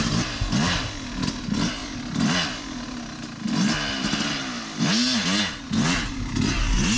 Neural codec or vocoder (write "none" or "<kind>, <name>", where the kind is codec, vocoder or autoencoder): none